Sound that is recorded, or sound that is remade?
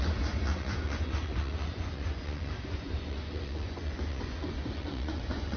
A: remade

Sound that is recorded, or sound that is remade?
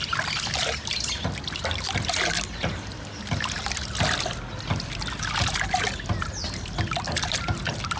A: recorded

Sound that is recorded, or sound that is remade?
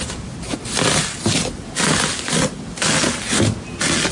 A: recorded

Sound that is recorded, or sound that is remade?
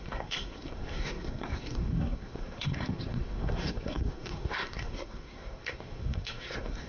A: remade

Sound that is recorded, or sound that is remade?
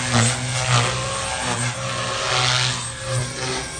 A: recorded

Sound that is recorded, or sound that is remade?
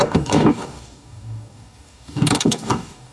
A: remade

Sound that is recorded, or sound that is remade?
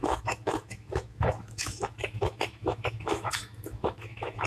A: remade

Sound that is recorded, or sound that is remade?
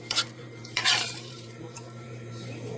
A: remade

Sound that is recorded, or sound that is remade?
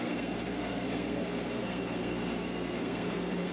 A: remade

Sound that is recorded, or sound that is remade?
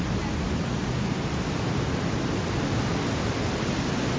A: recorded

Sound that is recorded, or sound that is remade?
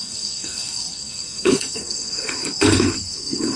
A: remade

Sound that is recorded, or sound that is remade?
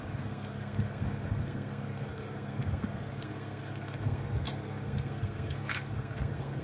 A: remade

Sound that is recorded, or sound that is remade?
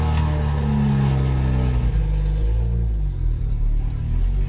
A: recorded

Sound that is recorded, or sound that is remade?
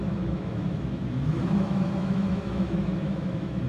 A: remade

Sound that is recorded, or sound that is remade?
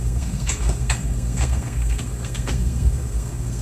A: remade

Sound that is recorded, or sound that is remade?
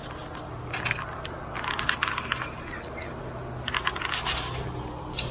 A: recorded